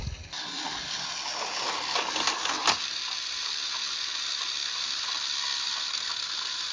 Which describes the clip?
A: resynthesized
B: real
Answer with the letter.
B